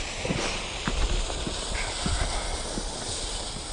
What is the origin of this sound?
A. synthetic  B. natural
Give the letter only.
B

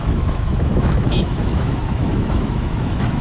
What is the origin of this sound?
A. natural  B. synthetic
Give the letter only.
B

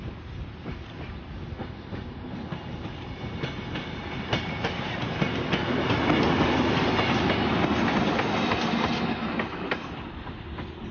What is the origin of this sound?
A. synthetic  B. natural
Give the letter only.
B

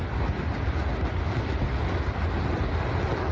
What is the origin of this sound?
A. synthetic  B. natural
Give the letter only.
B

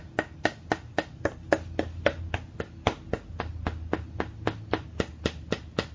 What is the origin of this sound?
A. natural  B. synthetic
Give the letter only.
A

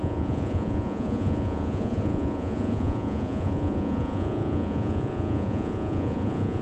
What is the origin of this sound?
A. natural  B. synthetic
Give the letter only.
B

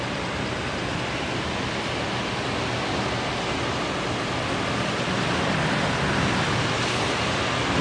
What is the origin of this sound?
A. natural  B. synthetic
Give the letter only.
A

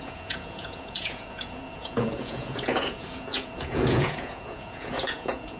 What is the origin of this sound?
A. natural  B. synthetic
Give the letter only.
B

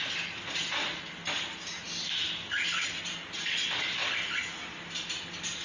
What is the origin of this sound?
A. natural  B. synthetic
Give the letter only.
A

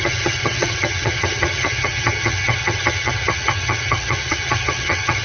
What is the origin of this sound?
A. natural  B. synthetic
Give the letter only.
B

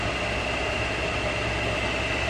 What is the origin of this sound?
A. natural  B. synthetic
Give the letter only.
A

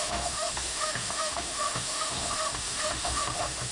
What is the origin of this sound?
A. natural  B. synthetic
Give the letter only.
B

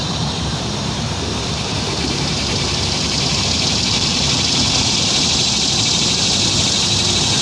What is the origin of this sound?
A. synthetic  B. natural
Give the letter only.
A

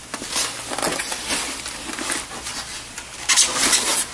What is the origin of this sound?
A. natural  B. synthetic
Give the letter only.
A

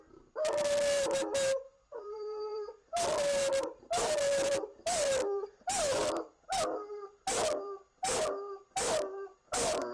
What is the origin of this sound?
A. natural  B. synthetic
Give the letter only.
B